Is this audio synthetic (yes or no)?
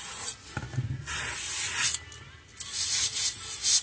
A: no